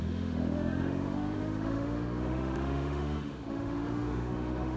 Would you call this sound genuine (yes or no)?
no